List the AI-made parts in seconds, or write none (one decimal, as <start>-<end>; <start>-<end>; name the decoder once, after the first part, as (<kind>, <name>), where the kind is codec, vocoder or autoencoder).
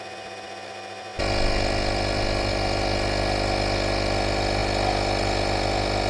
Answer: none